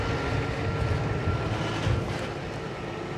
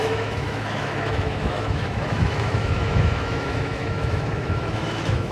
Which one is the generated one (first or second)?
second